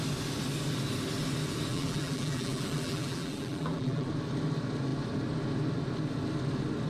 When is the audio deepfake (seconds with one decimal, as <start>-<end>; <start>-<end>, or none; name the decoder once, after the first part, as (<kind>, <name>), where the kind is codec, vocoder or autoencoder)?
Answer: 1.7-4.1 (vocoder, BigVGAN v2)